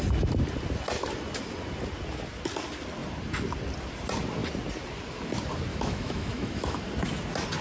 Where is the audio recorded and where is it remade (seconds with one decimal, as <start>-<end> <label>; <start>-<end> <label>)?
0.0-5.7 recorded; 5.7-6.8 remade; 6.8-7.6 recorded